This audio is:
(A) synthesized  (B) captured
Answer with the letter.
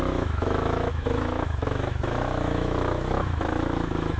A